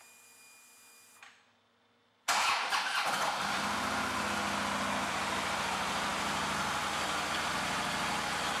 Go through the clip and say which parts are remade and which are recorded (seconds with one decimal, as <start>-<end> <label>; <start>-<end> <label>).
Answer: 0.0-8.6 recorded